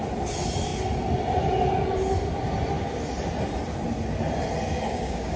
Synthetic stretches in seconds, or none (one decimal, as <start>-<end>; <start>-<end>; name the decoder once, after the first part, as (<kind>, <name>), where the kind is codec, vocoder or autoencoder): 4.9-5.4 (codec, DAC)